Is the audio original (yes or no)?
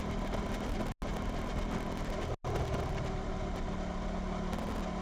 yes